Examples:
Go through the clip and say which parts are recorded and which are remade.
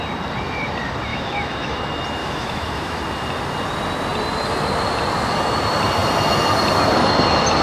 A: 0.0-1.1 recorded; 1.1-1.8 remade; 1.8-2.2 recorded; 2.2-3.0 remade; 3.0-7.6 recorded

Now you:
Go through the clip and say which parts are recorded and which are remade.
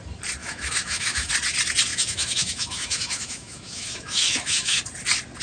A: 0.0-0.4 recorded; 0.4-1.3 remade; 1.3-1.9 recorded; 1.9-4.8 remade; 4.8-5.4 recorded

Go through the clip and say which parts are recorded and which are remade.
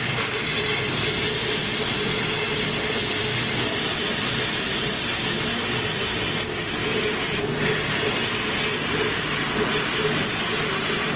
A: 0.0-6.8 recorded; 6.8-7.4 remade; 7.4-11.2 recorded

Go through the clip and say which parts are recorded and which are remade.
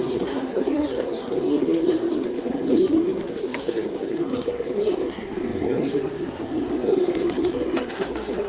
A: 0.0-8.5 remade